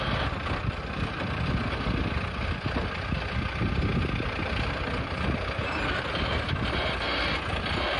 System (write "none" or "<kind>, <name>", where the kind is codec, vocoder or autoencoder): none